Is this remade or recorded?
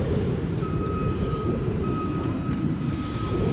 remade